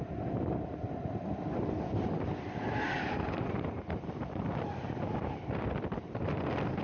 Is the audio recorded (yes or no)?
no